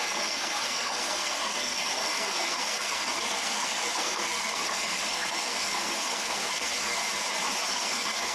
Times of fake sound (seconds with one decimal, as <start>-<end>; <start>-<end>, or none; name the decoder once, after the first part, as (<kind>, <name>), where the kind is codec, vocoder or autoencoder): 0.0-7.0 (codec, SNAC); 7.7-8.3